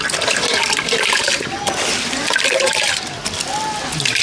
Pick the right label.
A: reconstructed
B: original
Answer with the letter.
B